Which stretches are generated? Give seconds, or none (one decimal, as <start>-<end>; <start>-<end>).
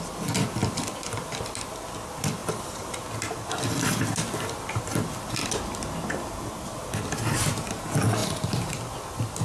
0.6-1.3; 8.2-8.9